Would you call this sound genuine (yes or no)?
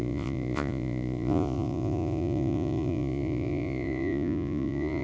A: no